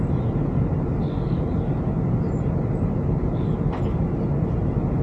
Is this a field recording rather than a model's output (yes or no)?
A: yes